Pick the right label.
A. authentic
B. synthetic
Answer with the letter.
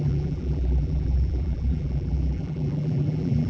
B